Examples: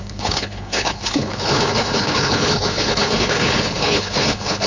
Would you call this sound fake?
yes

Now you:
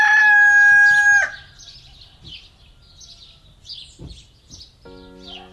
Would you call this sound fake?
no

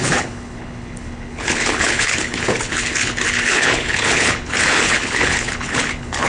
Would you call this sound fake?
yes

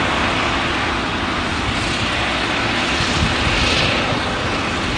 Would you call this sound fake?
no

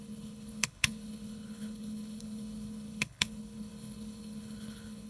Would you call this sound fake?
yes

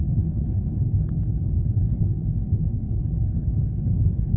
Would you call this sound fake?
yes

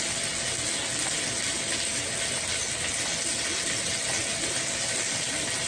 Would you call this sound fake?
no